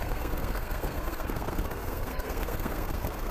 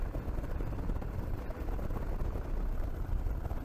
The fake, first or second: first